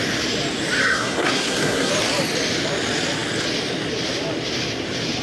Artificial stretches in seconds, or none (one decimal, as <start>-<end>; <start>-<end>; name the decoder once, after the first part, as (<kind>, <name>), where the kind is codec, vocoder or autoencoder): 0.8-1.9 (codec, SNAC)